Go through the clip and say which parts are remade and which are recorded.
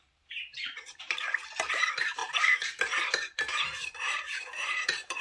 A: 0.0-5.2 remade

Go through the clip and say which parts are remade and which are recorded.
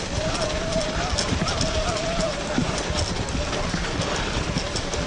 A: 0.0-5.1 recorded